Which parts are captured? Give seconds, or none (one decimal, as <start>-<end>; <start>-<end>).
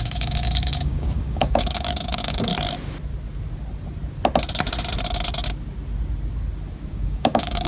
2.5-6.9